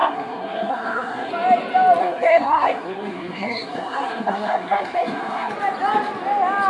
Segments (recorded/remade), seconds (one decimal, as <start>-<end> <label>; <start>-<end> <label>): 0.0-1.3 remade; 1.3-2.0 recorded; 2.0-5.5 remade; 5.5-6.7 recorded